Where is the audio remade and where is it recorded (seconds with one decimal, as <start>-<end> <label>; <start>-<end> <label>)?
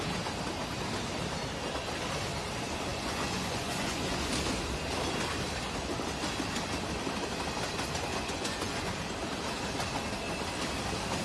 0.0-2.9 recorded; 2.9-4.3 remade; 4.3-8.1 recorded; 8.1-8.9 remade; 8.9-11.2 recorded